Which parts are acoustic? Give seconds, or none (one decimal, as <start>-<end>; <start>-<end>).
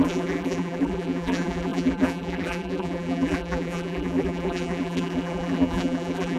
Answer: none